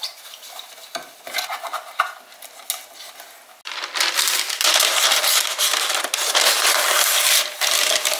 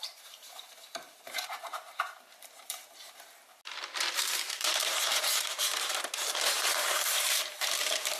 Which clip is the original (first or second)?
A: first